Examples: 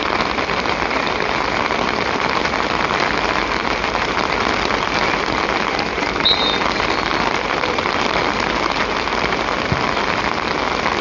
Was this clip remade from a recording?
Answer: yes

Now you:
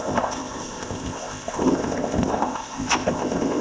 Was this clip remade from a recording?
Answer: yes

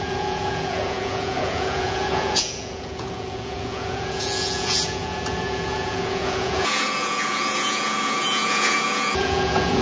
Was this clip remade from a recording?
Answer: yes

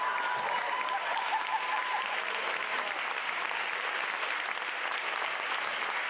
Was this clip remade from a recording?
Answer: no